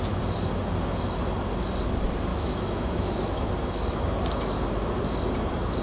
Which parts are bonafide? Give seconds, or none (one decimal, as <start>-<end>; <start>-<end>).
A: 0.0-2.3; 3.4-5.8